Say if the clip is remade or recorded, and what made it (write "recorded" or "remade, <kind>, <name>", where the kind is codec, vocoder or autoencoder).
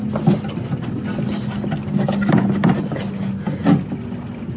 recorded